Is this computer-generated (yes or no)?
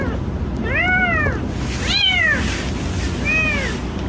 no